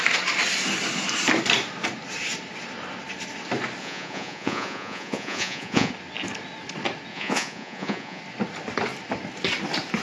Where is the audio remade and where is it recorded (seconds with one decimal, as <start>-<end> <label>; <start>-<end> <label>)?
0.0-3.8 recorded; 3.8-5.9 remade; 5.9-7.1 recorded; 7.1-8.2 remade; 8.2-10.0 recorded